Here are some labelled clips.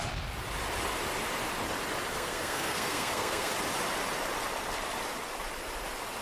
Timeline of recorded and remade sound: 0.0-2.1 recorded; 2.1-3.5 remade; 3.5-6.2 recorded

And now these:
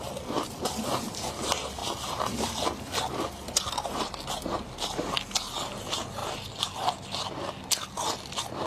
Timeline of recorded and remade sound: 0.0-8.7 recorded

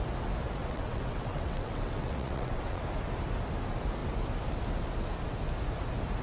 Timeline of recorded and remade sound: 0.0-0.6 recorded; 0.6-2.8 remade; 2.8-6.2 recorded

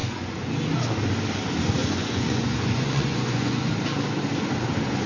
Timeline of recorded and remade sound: 0.0-0.5 remade; 0.5-1.8 recorded; 1.8-3.7 remade; 3.7-5.1 recorded

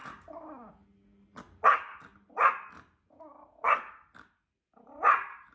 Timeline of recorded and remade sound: 0.0-5.5 recorded

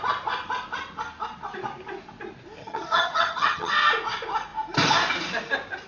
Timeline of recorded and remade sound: 0.0-2.6 recorded; 2.6-3.7 remade; 3.7-5.9 recorded

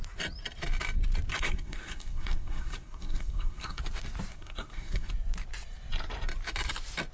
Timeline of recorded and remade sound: 0.0-1.3 recorded; 1.3-3.8 remade; 3.8-4.3 recorded; 4.3-5.1 remade; 5.1-7.1 recorded

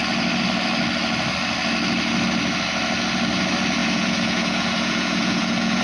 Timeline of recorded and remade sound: 0.0-3.8 recorded; 3.8-5.8 remade